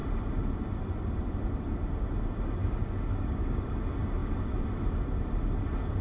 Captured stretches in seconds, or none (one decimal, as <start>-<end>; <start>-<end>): 0.0-2.6; 3.8-6.0